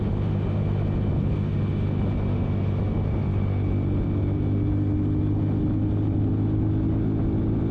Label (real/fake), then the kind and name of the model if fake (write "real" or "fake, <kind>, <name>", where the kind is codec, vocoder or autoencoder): real